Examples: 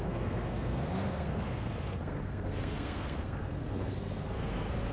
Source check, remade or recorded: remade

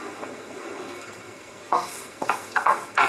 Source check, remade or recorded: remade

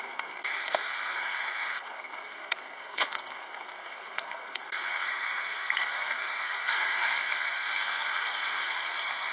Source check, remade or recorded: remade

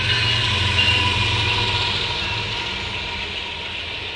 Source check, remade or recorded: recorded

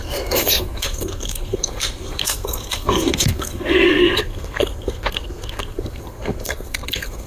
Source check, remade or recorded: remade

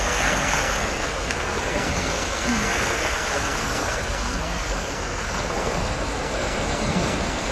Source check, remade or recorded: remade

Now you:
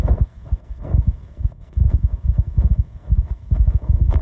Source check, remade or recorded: remade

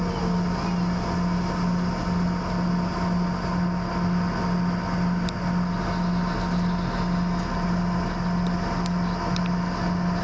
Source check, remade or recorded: recorded